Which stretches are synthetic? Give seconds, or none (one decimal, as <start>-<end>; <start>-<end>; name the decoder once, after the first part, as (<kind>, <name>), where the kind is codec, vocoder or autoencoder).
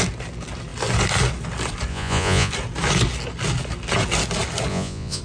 1.9-2.5 (vocoder, Vocos); 4.7-5.2